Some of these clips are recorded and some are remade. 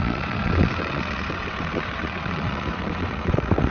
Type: remade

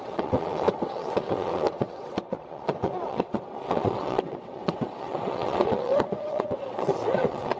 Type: remade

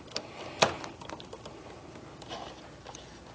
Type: recorded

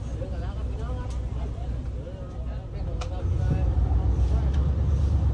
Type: recorded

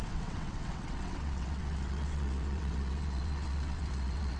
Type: remade